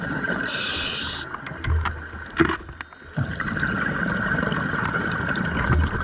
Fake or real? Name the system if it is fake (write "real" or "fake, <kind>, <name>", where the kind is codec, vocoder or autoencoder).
real